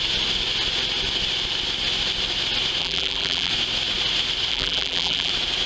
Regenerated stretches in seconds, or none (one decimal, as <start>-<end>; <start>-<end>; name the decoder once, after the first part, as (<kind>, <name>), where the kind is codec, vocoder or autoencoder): 2.8-3.5 (vocoder, BigVGAN v2); 4.5-5.3